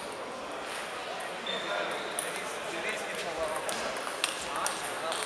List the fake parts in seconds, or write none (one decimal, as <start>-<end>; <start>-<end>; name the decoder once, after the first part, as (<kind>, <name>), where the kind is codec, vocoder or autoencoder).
none